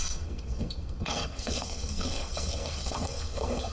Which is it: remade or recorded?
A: remade